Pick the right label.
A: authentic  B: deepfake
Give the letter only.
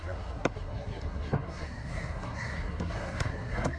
B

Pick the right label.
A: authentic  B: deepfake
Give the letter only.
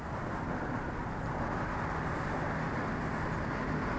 A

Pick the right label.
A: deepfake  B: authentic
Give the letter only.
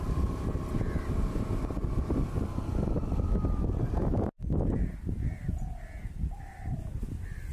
B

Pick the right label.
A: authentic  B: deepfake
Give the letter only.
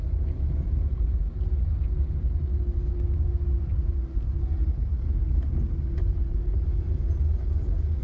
A